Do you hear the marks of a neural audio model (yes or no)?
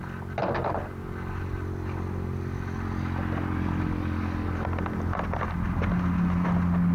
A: no